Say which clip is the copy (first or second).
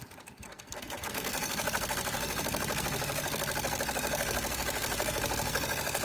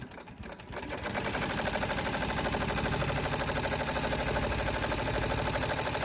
first